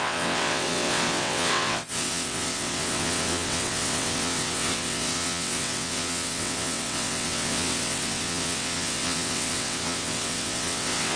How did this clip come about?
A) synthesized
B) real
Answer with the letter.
A